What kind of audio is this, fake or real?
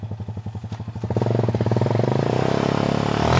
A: real